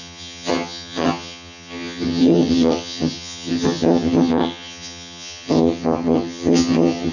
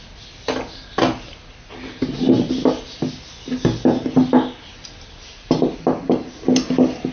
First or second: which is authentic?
second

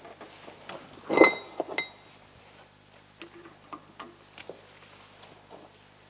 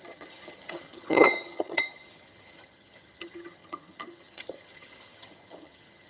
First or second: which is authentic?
first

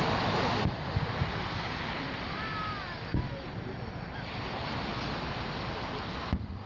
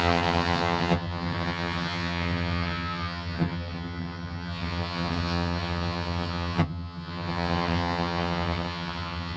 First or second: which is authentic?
first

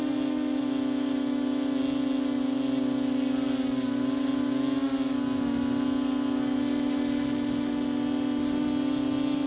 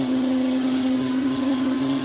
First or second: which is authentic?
first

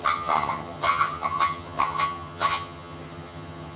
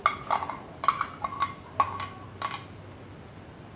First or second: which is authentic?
second